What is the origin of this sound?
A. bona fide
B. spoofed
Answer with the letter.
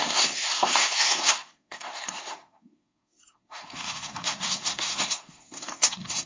B